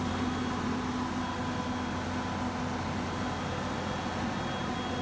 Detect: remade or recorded recorded